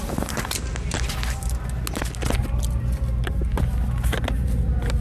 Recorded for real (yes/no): yes